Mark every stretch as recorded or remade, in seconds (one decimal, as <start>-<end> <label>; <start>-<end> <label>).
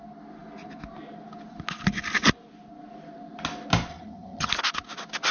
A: 0.0-3.9 recorded; 3.9-4.5 remade; 4.5-5.3 recorded